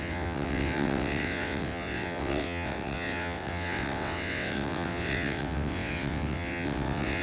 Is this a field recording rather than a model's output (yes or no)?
no